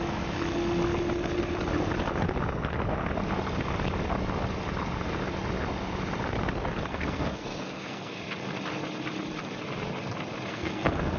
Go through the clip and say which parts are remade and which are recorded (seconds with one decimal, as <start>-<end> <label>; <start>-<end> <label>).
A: 0.0-6.9 recorded; 6.9-8.2 remade; 8.2-10.5 recorded; 10.5-11.2 remade